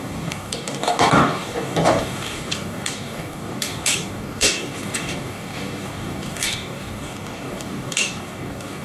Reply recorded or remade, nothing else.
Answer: remade